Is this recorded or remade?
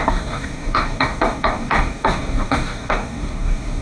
remade